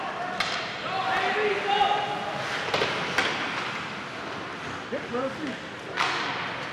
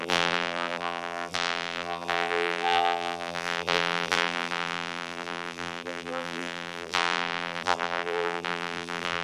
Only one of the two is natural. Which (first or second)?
first